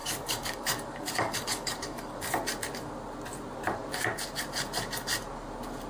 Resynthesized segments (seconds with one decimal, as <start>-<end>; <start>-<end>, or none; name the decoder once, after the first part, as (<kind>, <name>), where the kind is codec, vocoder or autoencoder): 0.0-2.2 (codec, DAC)